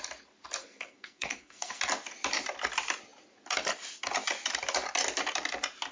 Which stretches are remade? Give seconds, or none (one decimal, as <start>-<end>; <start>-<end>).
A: 0.6-1.8